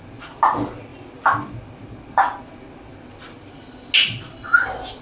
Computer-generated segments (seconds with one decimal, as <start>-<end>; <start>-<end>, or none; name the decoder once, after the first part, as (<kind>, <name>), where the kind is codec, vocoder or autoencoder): none